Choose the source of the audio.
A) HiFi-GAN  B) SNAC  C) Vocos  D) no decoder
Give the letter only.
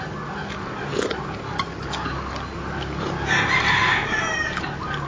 D